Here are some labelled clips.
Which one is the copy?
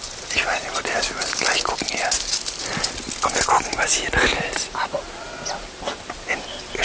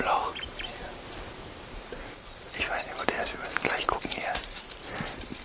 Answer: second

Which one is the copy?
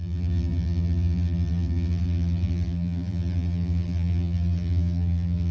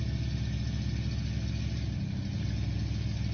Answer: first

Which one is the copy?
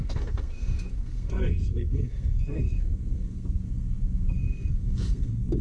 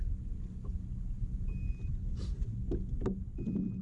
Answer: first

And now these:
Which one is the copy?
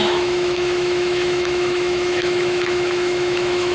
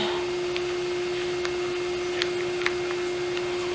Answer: first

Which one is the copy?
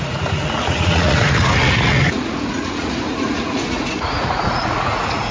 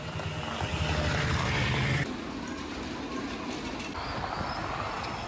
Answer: first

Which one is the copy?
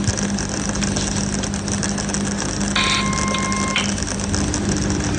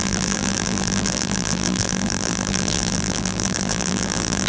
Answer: second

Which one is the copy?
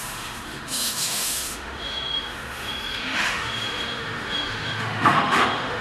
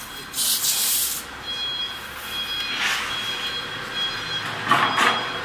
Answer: first